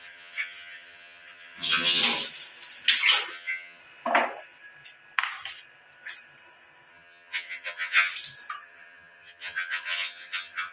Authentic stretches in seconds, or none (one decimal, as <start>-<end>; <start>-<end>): 2.0-3.3; 3.8-6.9; 8.1-8.6